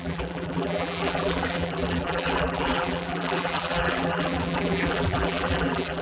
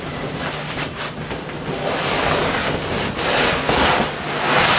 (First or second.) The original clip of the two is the second